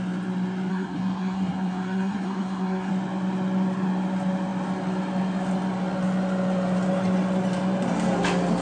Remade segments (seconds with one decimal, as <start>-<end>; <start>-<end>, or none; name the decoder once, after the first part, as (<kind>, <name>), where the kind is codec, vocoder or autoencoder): 0.7-2.9 (codec, SNAC)